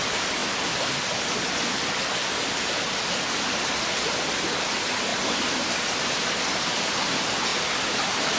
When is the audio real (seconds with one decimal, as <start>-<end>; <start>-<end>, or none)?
0.4-3.8

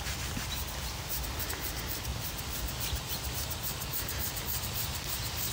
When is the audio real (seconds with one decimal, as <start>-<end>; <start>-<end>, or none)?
0.0-2.1

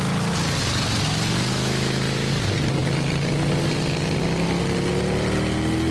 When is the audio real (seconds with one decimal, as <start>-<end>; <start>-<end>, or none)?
0.0-1.5; 2.3-5.9

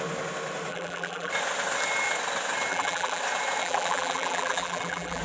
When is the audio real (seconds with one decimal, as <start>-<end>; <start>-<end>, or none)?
0.0-0.7; 1.3-2.7; 3.2-3.6

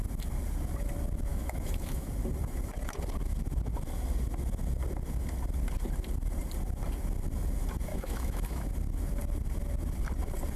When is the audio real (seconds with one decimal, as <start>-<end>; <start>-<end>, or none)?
0.0-1.3; 2.1-7.9; 8.7-10.6

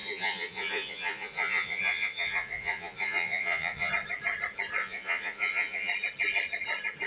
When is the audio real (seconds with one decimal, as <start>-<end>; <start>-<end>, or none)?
3.9-4.8; 5.9-7.1

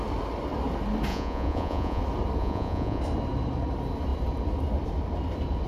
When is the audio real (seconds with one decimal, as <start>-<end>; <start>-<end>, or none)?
0.0-1.1; 2.0-2.4; 3.0-5.7